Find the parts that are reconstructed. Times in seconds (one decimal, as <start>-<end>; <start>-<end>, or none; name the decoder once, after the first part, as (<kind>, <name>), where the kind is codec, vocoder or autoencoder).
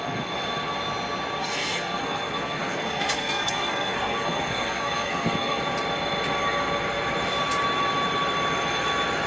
1.4-5.6 (codec, SNAC)